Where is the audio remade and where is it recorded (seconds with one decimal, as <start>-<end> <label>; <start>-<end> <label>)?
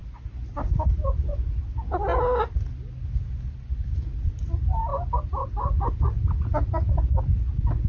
0.0-7.9 recorded